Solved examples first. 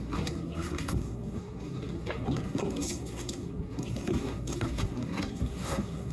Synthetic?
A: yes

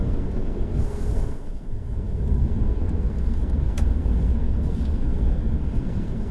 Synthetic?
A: yes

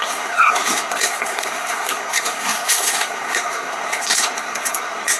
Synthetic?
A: yes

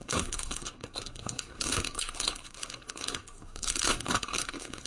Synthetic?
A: yes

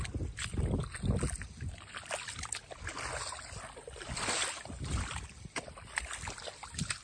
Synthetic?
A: no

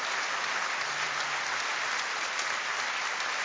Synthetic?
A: no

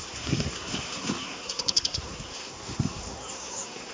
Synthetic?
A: yes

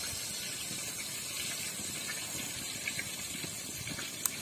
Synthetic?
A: no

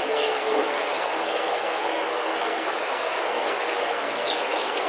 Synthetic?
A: yes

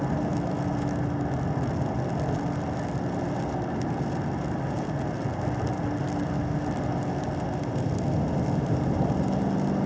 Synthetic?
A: no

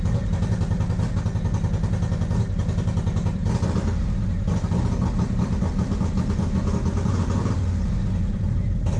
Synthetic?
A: no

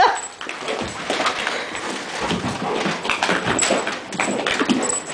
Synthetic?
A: no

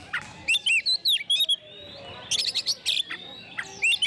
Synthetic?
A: no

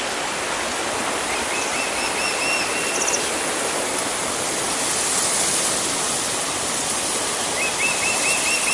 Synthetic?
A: no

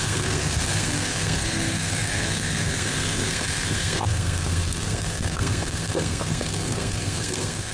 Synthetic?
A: yes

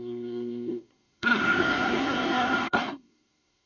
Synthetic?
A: yes